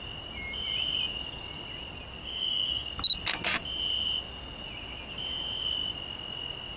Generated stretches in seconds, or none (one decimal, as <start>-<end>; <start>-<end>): 2.2-2.9